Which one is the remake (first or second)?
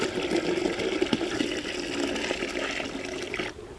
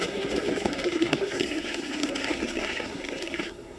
second